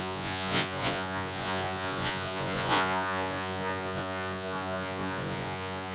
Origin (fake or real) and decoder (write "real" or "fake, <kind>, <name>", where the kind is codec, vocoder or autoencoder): fake, vocoder, Vocos